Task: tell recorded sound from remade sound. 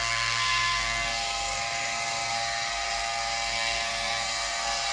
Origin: remade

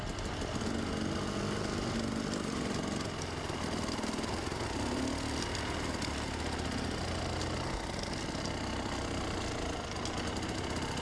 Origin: recorded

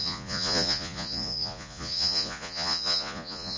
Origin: remade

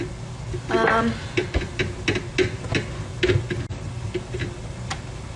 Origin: recorded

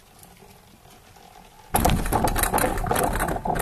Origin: recorded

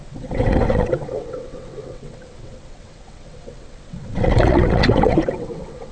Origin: remade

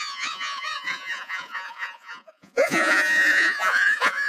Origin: remade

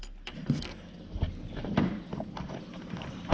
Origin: recorded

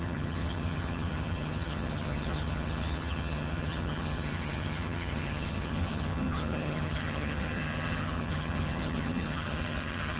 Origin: remade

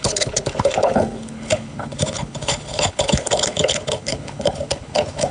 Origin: remade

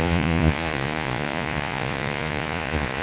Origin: remade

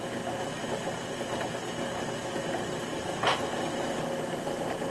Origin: recorded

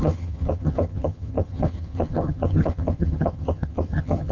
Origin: remade